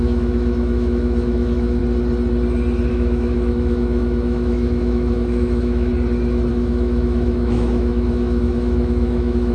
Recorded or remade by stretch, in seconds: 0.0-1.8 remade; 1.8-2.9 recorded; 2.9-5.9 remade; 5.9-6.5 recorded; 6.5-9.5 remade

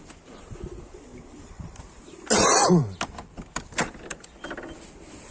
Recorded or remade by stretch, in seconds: 0.0-5.3 recorded

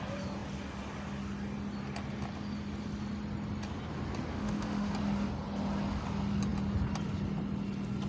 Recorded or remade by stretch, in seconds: 0.0-4.3 recorded; 4.3-4.9 remade; 4.9-8.1 recorded

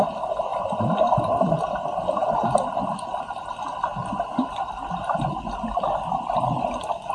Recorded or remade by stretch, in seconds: 0.0-7.1 recorded

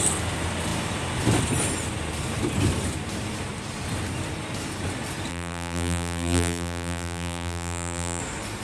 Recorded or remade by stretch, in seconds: 0.0-5.3 recorded; 5.3-8.2 remade; 8.2-8.6 recorded

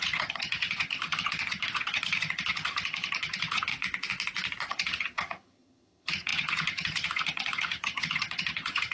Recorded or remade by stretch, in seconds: 0.0-3.7 remade; 3.7-4.7 recorded; 4.7-8.9 remade

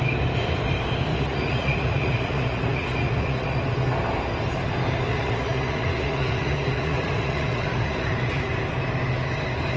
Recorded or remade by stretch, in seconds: 0.0-1.1 recorded; 1.1-3.6 remade; 3.6-5.1 recorded; 5.1-8.5 remade; 8.5-9.8 recorded